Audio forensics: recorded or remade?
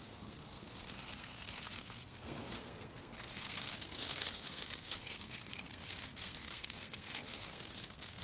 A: remade